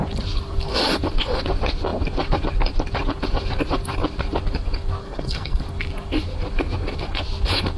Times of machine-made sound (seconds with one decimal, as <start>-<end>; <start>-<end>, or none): 5.0-5.6